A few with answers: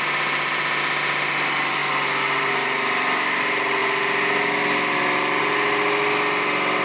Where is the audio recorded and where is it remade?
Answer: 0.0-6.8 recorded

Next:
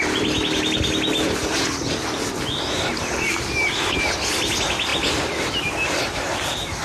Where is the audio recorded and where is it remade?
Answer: 0.0-6.8 recorded